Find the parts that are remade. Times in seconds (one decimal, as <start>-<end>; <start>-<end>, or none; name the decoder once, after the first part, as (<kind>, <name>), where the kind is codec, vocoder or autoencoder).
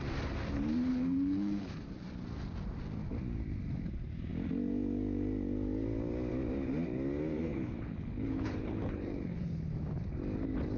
0.9-1.9 (codec, HILCodec); 7.3-9.5